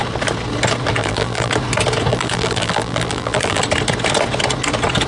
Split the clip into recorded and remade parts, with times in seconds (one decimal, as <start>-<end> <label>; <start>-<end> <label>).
0.0-1.0 recorded; 1.0-1.5 remade; 1.5-2.1 recorded; 2.1-3.6 remade; 3.6-5.1 recorded